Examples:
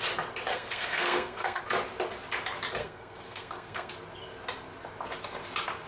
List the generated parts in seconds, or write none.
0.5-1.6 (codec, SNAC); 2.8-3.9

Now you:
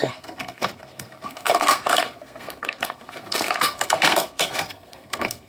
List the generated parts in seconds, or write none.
0.0-5.5 (codec, SNAC)

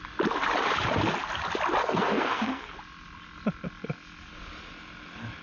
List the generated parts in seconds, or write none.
1.8-2.7 (codec, SNAC)

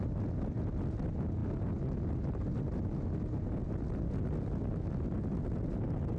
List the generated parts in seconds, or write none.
none

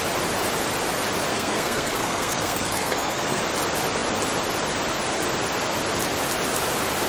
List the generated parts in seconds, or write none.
1.3-3.4 (codec, SNAC)

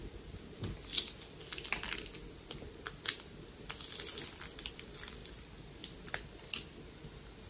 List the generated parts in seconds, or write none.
none